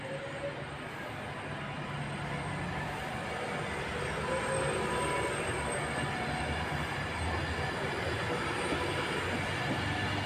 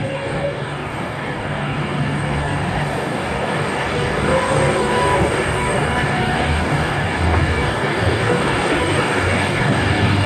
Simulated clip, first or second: second